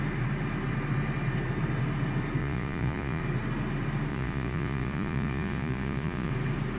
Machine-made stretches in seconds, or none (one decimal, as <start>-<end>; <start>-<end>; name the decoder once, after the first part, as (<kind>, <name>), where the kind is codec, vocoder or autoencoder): 2.4-3.2 (vocoder, Vocos); 4.1-6.3